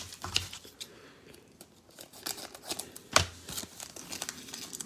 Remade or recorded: recorded